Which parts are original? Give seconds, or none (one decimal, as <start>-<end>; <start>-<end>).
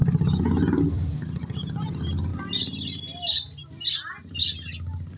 0.0-5.2